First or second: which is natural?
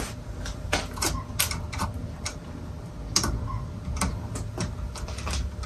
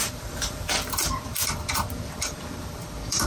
first